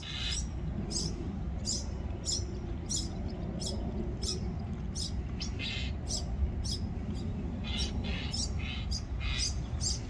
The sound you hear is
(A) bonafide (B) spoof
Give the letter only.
A